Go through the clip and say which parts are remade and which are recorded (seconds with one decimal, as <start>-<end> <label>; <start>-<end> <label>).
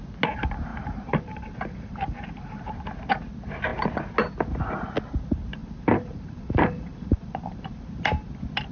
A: 0.0-0.7 recorded; 0.7-2.6 remade; 2.6-5.6 recorded; 5.6-7.9 remade; 7.9-8.7 recorded